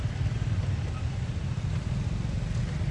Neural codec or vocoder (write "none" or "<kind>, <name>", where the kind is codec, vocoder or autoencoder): none